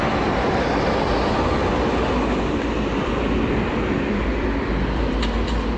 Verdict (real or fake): real